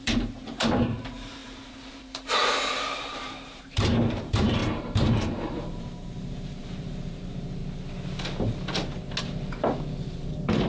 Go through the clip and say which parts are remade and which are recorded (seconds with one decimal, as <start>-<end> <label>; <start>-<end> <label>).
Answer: 0.0-7.6 remade; 7.6-9.2 recorded; 9.2-10.7 remade